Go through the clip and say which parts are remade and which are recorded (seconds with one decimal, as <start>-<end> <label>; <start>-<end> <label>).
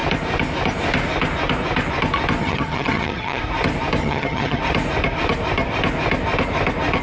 0.0-2.4 recorded; 2.4-3.4 remade; 3.4-4.0 recorded; 4.0-4.6 remade; 4.6-7.0 recorded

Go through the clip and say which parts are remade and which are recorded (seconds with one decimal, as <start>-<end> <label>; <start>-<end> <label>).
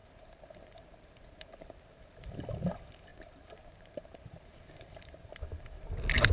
0.0-1.8 remade; 1.8-3.1 recorded; 3.1-5.3 remade; 5.3-6.3 recorded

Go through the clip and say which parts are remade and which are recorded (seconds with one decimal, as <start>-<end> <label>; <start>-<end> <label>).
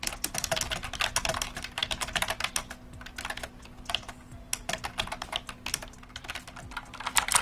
0.0-7.4 recorded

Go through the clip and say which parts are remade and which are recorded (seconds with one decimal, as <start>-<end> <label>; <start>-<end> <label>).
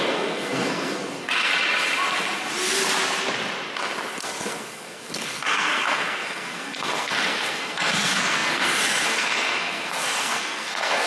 0.0-1.5 remade; 1.5-4.2 recorded; 4.2-11.1 remade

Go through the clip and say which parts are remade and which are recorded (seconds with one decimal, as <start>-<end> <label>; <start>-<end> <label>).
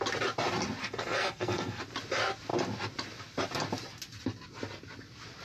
0.0-0.8 recorded; 0.8-1.8 remade; 1.8-5.4 recorded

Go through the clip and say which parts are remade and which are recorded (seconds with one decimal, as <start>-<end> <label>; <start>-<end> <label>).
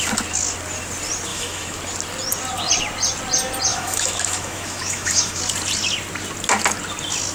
0.0-1.3 recorded; 1.3-1.8 remade; 1.8-3.7 recorded; 3.7-5.4 remade; 5.4-7.3 recorded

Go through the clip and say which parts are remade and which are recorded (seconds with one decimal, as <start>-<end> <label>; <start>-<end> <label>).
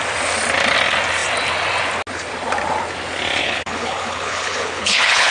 0.0-3.4 recorded; 3.4-5.3 remade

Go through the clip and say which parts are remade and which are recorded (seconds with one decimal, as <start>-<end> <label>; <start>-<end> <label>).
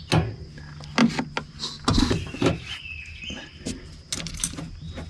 0.0-5.1 recorded